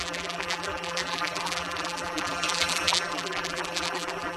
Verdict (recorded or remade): remade